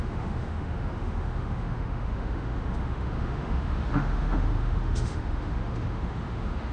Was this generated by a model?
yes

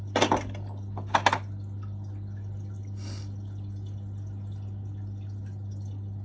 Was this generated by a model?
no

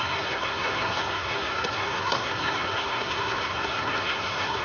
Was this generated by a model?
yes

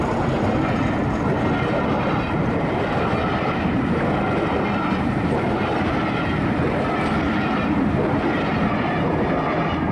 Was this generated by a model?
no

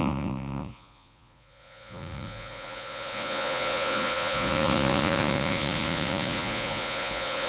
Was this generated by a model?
yes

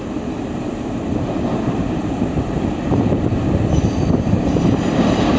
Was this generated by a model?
yes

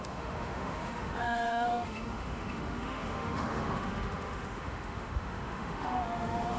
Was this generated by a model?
yes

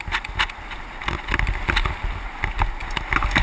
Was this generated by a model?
no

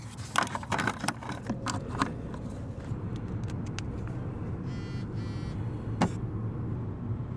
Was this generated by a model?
no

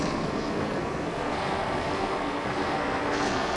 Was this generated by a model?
yes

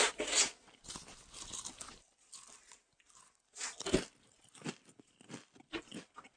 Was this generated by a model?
no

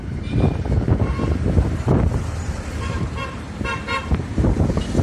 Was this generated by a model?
yes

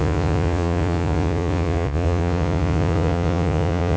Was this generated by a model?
yes